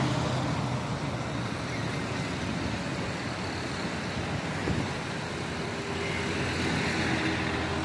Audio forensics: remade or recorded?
recorded